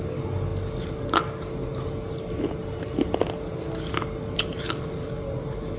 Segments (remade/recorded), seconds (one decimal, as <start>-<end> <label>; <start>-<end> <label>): 0.0-5.8 recorded